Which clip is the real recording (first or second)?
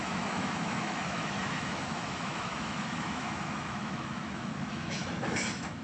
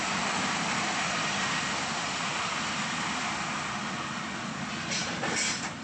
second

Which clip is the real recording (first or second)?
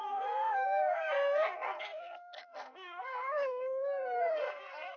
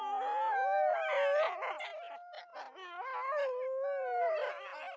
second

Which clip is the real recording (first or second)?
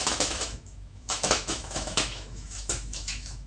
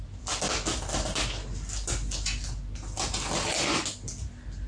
second